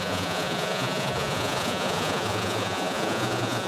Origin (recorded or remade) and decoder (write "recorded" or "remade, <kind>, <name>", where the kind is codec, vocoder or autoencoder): remade, vocoder, Vocos